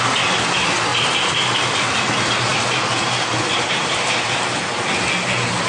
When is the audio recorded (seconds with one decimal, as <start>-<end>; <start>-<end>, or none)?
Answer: 0.0-5.7